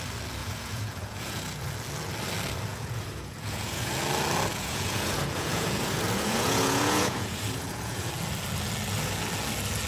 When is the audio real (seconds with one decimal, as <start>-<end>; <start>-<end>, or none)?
0.0-0.4; 1.6-2.7; 3.9-4.5; 8.1-9.9